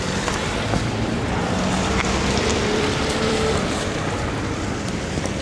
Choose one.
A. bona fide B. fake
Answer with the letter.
B